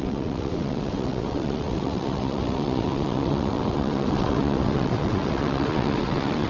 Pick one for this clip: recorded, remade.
remade